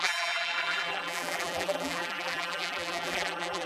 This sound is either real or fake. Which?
fake